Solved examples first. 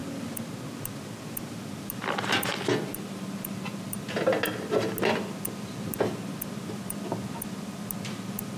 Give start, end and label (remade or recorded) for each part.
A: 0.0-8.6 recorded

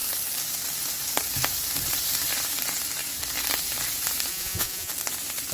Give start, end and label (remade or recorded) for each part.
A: 0.0-4.3 recorded; 4.3-4.9 remade; 4.9-5.5 recorded

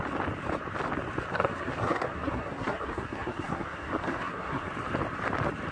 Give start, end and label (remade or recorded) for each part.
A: 0.0-1.3 recorded; 1.3-4.7 remade; 4.7-5.7 recorded